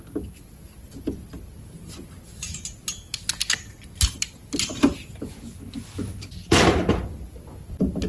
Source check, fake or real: real